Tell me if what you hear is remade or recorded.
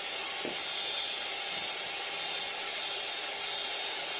recorded